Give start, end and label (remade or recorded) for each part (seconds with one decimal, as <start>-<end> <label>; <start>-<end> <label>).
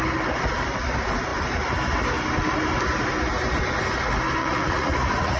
0.0-4.4 recorded; 4.4-5.4 remade